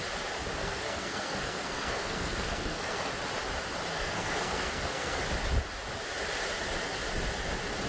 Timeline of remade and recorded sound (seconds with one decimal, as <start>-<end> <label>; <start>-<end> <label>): 0.0-0.6 recorded; 0.6-3.1 remade; 3.1-3.9 recorded; 3.9-5.2 remade; 5.2-7.9 recorded